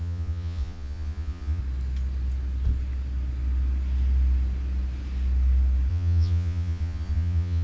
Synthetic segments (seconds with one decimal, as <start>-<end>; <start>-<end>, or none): 0.0-1.6; 5.9-7.6